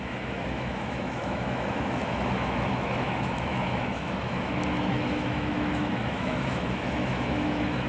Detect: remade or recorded remade